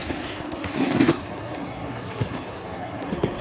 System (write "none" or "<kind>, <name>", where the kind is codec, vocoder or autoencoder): codec, SNAC